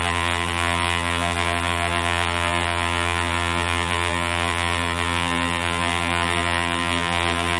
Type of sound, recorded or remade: remade